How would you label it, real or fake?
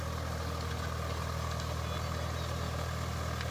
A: real